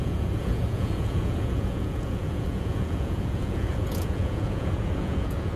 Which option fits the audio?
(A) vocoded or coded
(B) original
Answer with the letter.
A